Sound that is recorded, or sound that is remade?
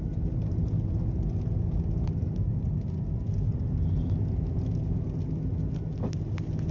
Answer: recorded